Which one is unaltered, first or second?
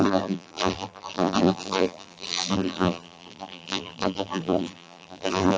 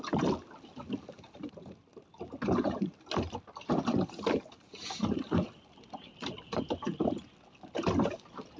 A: second